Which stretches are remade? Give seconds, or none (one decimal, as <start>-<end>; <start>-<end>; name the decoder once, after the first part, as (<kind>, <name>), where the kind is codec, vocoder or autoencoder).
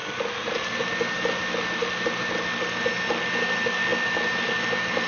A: none